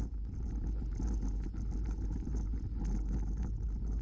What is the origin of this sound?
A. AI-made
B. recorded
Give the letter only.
B